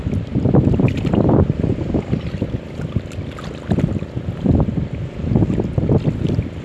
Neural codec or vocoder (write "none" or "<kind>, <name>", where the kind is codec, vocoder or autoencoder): none